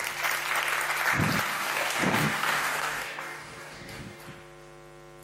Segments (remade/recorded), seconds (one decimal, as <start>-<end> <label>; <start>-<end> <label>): 0.0-1.5 recorded; 1.5-4.2 remade; 4.2-5.2 recorded

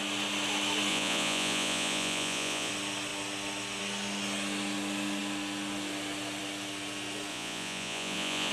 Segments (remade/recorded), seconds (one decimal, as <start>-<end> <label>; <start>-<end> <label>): 0.0-0.9 recorded; 0.9-2.7 remade; 2.7-7.3 recorded; 7.3-8.5 remade